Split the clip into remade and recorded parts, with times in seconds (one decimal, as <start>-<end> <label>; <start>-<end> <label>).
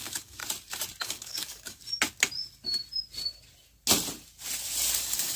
0.0-0.4 remade; 0.4-1.0 recorded; 1.0-1.8 remade; 1.8-5.0 recorded; 5.0-5.4 remade